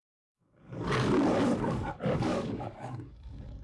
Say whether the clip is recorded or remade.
remade